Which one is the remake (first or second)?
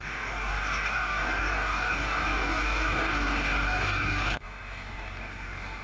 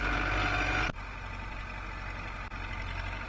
first